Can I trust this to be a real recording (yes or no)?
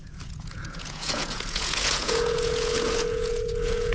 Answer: no